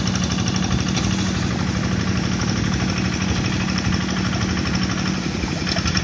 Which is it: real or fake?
real